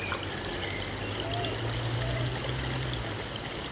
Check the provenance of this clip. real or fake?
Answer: real